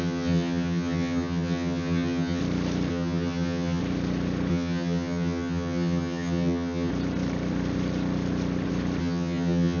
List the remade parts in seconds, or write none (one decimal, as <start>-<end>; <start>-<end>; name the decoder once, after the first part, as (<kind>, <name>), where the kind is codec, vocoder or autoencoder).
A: 0.0-2.4 (vocoder, HiFi-GAN); 2.9-3.8; 4.5-6.9; 9.0-9.8